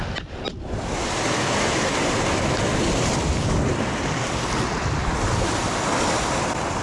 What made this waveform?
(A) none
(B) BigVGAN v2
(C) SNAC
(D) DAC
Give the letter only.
A